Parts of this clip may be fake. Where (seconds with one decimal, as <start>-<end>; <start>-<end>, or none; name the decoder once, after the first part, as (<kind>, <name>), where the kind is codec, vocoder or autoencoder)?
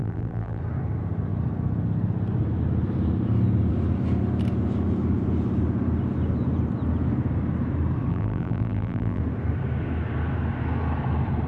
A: 0.0-0.6 (vocoder, BigVGAN v2); 8.1-9.2